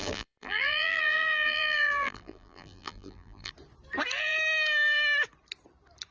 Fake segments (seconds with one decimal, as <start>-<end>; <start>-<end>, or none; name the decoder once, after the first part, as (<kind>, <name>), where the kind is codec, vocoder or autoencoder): 0.0-3.5 (vocoder, BigVGAN v2)